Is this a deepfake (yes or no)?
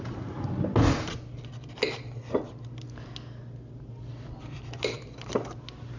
no